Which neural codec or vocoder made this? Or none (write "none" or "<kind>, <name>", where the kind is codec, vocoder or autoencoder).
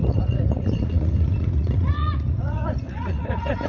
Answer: vocoder, Vocos